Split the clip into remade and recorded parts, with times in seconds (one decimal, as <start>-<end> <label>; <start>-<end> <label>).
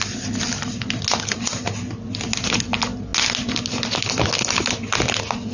0.0-5.5 recorded